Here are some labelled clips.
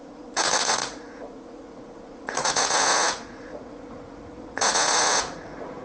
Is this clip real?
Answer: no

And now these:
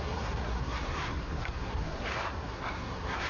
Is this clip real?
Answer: no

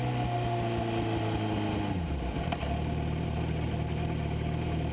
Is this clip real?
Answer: yes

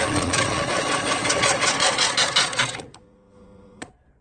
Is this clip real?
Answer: no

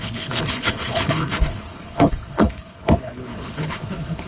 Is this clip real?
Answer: no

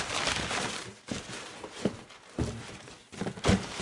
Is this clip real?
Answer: yes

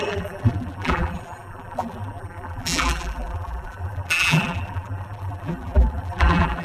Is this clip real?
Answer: no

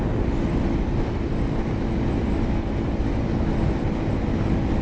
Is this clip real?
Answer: yes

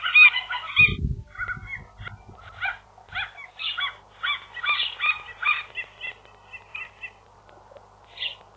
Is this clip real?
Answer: yes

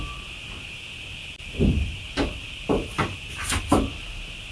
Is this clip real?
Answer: yes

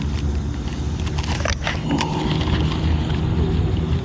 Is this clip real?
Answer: yes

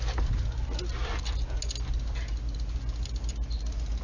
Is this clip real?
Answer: yes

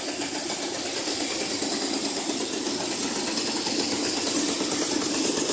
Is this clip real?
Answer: yes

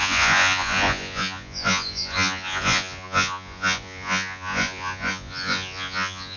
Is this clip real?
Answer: no